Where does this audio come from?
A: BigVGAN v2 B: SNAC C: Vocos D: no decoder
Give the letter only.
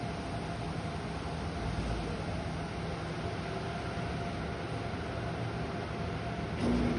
D